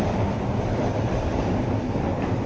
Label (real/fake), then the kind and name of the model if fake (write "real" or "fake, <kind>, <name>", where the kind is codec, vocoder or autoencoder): real